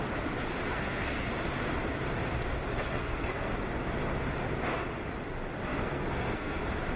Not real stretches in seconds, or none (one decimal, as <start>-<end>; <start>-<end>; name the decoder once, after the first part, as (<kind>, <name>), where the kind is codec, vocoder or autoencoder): 0.7-1.3 (codec, SNAC); 2.7-3.5; 5.7-6.6